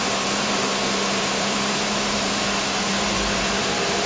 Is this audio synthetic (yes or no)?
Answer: yes